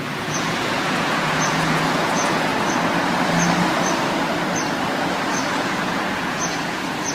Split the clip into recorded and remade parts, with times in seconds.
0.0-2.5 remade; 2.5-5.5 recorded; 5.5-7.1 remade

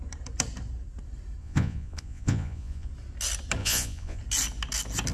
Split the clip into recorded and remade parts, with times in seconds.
0.0-1.4 recorded; 1.4-2.9 remade; 2.9-3.6 recorded; 3.6-4.2 remade; 4.2-5.1 recorded

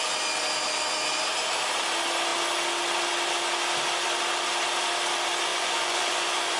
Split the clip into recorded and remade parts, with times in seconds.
0.0-5.5 recorded; 5.5-6.6 remade

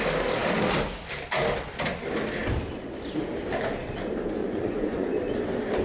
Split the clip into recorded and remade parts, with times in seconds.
0.0-4.4 recorded; 4.4-5.1 remade; 5.1-5.8 recorded

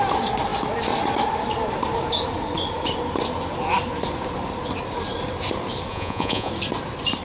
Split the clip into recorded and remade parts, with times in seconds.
0.0-5.9 recorded; 5.9-6.5 remade; 6.5-7.2 recorded

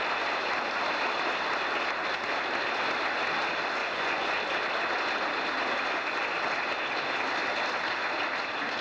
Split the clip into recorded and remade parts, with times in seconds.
0.0-3.8 recorded; 3.8-4.4 remade; 4.4-8.8 recorded

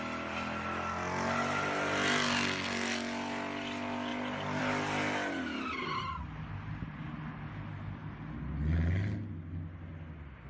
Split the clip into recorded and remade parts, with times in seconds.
0.0-10.5 recorded

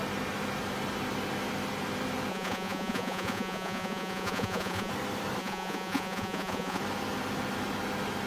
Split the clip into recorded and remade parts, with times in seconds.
0.0-2.3 recorded; 2.3-4.9 remade; 4.9-5.4 recorded; 5.4-6.8 remade; 6.8-8.3 recorded